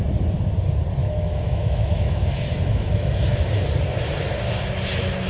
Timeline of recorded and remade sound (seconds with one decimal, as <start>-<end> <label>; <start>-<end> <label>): 0.0-1.0 recorded; 1.0-3.4 remade; 3.4-5.3 recorded